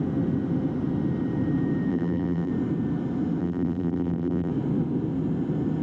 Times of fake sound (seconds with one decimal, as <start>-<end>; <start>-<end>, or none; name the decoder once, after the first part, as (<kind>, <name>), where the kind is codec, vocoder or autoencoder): 1.9-2.5 (vocoder, BigVGAN v2); 3.4-4.5